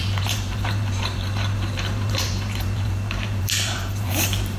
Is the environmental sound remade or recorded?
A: remade